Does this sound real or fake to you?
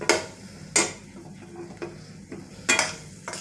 real